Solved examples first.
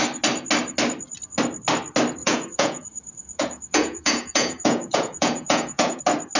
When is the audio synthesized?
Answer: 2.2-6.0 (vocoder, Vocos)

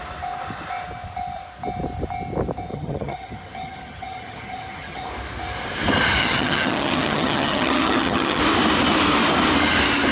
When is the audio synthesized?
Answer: 2.7-5.1 (vocoder, HiFi-GAN); 6.2-8.4

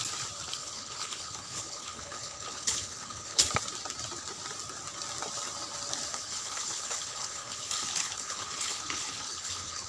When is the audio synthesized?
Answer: 0.6-3.5 (codec, HILCodec); 6.1-9.9

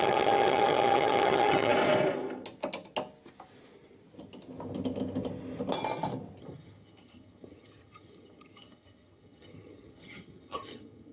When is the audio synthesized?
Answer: 0.0-1.7 (vocoder, HiFi-GAN); 6.4-11.1

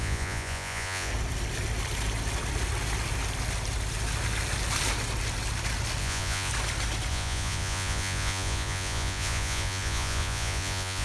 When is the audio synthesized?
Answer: 0.0-1.1 (vocoder, Vocos); 6.0-6.5; 7.1-11.0

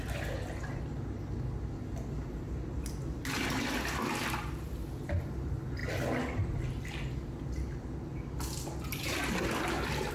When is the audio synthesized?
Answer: none

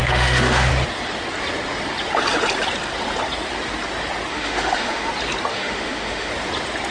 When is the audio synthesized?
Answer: 0.0-0.7 (autoencoder, DAC-VAE); 4.3-5.1; 5.5-6.3